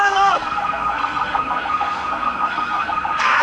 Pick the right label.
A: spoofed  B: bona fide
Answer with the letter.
A